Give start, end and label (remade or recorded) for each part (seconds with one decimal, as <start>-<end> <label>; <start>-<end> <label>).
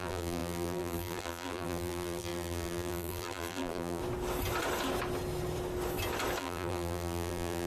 0.0-4.0 remade; 4.0-6.4 recorded; 6.4-7.7 remade